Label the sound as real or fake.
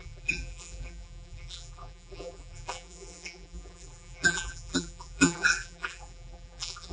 fake